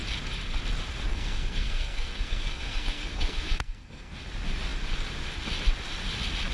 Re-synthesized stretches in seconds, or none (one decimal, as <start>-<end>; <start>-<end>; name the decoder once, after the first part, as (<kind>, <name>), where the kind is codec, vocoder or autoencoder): 1.1-4.1 (codec, SNAC)